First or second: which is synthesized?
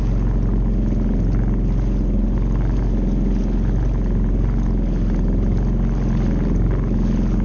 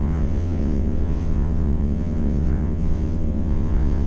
second